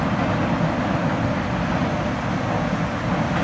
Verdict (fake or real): real